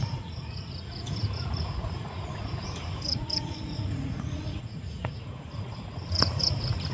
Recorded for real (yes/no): no